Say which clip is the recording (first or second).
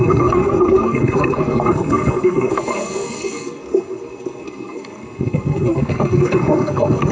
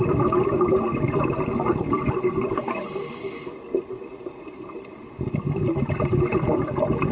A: second